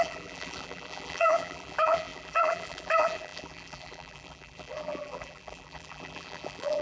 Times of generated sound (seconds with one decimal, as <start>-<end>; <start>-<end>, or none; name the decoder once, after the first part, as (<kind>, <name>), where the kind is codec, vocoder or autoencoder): 0.0-6.8 (vocoder, BigVGAN v2)